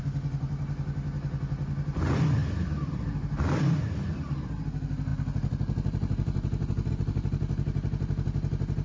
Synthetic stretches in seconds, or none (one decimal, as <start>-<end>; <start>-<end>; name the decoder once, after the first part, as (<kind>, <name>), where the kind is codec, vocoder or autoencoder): none